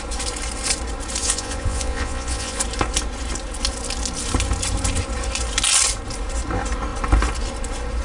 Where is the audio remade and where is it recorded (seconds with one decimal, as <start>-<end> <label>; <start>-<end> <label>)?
0.0-1.2 recorded; 1.2-2.6 remade; 2.6-8.0 recorded